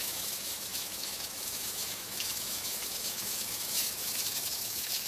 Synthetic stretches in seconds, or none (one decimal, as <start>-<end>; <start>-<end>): 0.0-5.1